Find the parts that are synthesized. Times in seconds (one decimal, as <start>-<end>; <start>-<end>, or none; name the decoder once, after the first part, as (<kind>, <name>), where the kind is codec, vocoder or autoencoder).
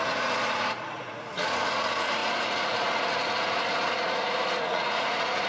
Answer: 0.0-5.5 (vocoder, Vocos)